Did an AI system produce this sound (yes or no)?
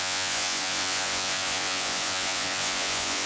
yes